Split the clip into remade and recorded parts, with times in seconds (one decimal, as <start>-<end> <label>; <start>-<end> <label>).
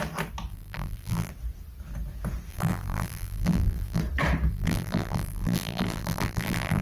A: 0.0-0.5 recorded; 0.5-1.3 remade; 1.3-2.5 recorded; 2.5-4.0 remade; 4.0-4.5 recorded; 4.5-6.8 remade